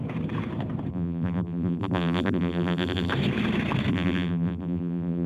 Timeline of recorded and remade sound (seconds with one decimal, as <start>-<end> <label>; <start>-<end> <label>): 0.0-0.9 recorded; 0.9-3.1 remade; 3.1-3.9 recorded; 3.9-5.3 remade